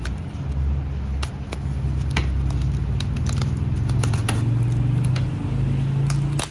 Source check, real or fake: real